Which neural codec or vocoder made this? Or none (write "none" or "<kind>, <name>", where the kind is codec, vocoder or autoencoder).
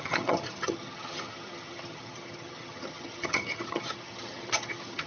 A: vocoder, HiFi-GAN